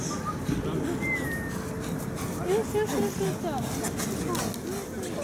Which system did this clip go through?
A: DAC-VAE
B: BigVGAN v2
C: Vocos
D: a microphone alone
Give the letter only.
D